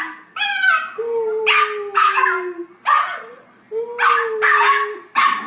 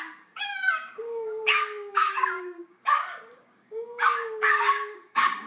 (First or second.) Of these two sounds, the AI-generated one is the second